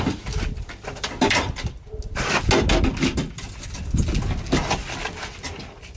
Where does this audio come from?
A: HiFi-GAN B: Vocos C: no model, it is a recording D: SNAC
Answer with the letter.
C